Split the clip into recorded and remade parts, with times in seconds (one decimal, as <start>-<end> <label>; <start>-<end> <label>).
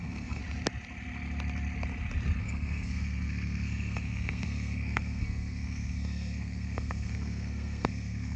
0.0-0.4 remade; 0.4-2.4 recorded; 2.4-8.4 remade